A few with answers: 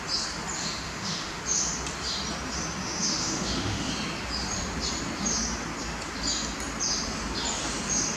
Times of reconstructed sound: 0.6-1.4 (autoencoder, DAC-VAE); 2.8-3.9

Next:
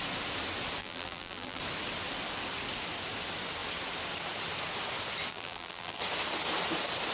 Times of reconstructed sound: 0.8-1.6 (vocoder, BigVGAN v2); 5.3-6.0

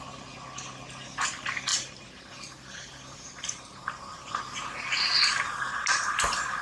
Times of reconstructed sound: 1.7-4.4 (vocoder, BigVGAN v2); 5.3-6.6

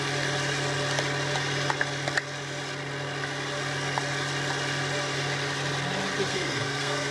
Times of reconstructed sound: 6.3-7.1 (codec, SNAC)

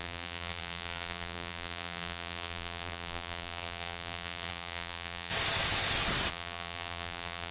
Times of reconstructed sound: 0.0-5.3 (vocoder, BigVGAN v2); 6.3-7.5

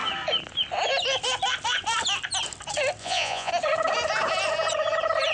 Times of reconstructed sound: 3.0-3.5 (vocoder, Vocos)

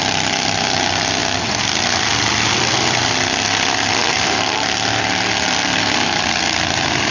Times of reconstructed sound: none